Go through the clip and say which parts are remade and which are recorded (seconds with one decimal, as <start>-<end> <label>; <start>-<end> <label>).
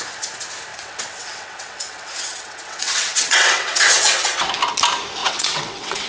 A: 0.0-0.7 recorded; 0.7-4.4 remade; 4.4-5.2 recorded; 5.2-6.1 remade